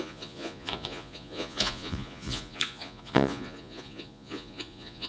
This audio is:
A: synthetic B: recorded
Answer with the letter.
A